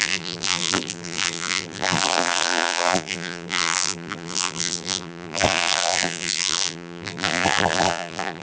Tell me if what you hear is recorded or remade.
remade